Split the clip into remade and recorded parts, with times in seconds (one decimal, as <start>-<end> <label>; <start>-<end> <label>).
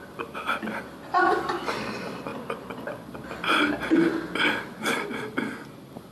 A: 0.0-2.3 remade; 2.3-6.1 recorded